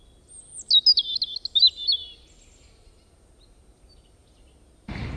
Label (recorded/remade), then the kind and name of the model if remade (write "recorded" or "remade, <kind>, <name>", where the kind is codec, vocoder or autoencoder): recorded